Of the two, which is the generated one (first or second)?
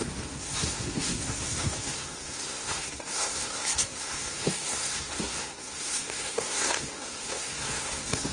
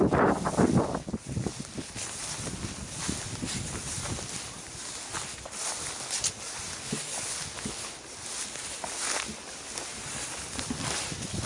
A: first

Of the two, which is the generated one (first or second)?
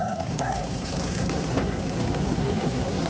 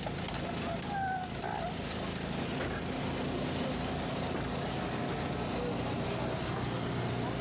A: first